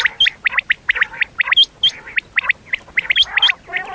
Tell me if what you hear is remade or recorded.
recorded